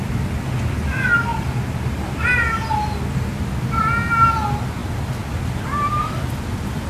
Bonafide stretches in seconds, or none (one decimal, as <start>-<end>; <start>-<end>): 0.0-4.8; 5.4-6.9